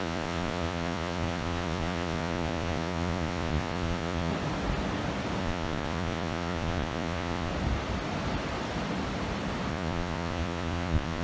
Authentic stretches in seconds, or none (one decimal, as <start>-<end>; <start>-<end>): 4.3-5.4; 7.5-9.7